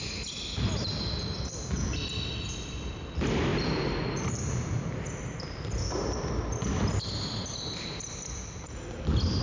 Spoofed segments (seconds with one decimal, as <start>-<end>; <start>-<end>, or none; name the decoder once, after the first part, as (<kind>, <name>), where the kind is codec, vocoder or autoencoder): 3.5-4.9 (vocoder, BigVGAN v2)

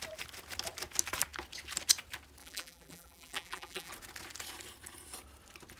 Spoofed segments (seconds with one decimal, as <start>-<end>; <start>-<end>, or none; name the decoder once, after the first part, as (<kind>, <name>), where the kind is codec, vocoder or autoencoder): 2.4-3.9 (vocoder, BigVGAN v2)

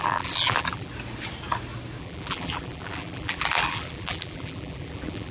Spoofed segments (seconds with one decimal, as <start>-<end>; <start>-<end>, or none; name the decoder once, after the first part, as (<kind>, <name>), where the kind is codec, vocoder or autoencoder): 0.0-0.9 (vocoder, BigVGAN v2); 2.0-5.3

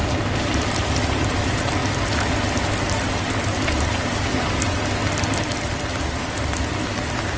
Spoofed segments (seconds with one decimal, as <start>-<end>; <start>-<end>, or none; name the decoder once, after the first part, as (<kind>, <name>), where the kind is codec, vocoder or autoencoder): none

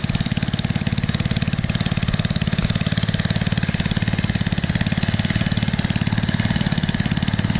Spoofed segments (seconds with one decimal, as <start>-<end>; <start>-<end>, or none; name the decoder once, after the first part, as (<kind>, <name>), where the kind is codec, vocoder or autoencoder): 0.0-2.6 (vocoder, BigVGAN v2); 6.6-7.6